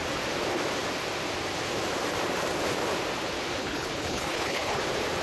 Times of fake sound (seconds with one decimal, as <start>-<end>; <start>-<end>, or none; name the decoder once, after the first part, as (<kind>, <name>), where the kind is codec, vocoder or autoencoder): 3.6-4.8 (codec, HILCodec)